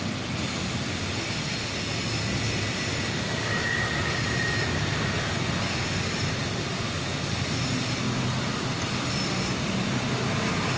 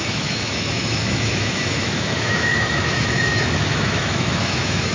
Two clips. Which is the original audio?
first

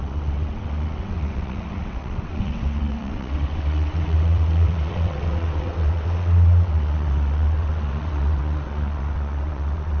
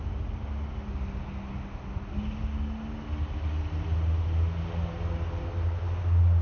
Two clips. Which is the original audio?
second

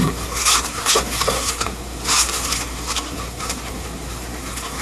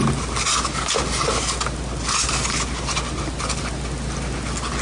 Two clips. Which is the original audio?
second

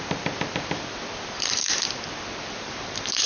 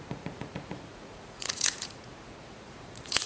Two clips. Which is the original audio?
first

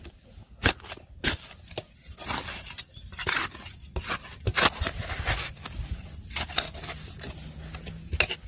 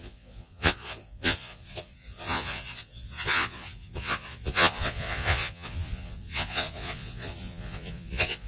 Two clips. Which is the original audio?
first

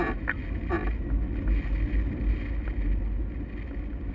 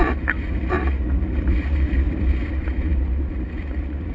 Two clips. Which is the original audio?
first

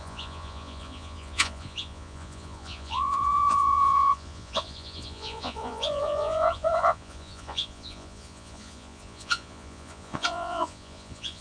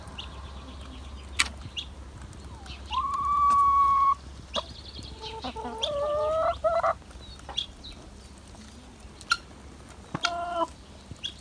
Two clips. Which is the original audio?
second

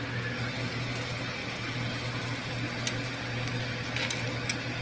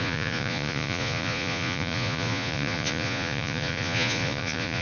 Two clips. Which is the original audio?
first